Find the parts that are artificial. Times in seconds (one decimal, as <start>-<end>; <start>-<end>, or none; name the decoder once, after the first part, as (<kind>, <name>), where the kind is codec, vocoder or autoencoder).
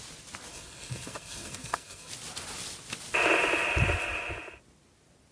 0.5-2.1 (codec, SNAC)